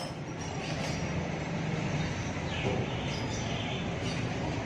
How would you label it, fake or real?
fake